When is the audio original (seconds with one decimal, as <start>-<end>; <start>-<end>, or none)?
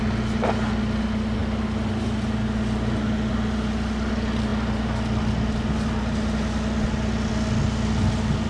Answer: 0.0-8.5